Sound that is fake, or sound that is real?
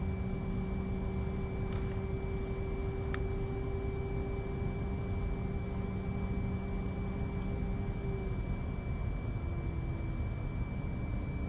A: real